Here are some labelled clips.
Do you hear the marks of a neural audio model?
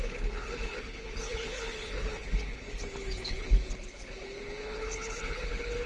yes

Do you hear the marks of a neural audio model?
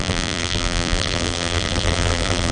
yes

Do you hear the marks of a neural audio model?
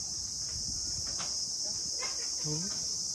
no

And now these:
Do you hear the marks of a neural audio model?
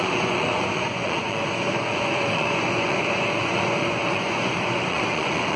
yes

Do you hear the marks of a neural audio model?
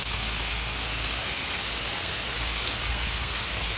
yes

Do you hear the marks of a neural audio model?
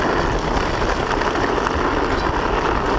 no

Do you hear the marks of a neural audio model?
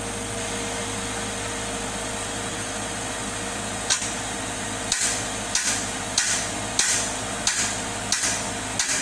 no